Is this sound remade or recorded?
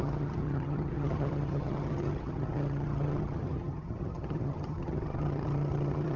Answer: remade